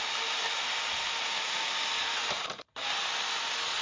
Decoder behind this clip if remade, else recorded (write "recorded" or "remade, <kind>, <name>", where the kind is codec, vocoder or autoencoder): recorded